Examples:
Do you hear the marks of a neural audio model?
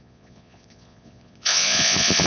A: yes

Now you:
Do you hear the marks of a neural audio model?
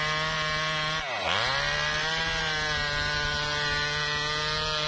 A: no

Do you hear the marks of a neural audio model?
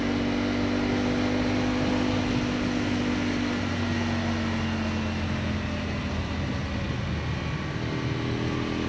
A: no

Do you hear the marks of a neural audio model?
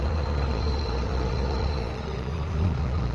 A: yes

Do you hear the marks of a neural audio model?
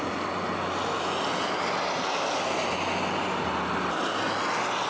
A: no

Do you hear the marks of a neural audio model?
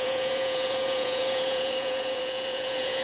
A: yes